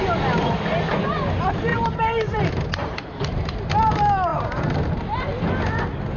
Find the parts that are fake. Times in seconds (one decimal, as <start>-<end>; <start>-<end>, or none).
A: 1.7-3.7; 4.3-5.2